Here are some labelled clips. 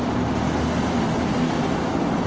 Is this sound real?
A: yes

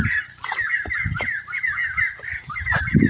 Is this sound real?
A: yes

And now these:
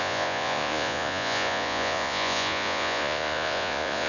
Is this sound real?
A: no